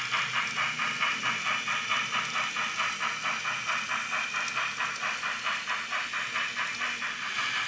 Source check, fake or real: real